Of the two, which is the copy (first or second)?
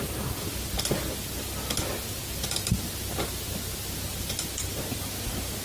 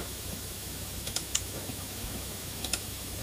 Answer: second